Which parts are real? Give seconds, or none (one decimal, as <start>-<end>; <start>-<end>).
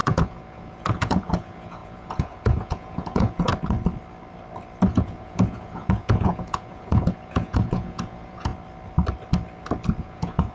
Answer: 3.5-4.9; 8.5-10.0